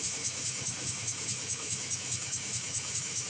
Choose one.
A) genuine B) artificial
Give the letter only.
B